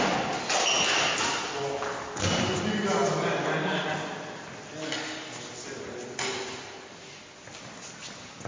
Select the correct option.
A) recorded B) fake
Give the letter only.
A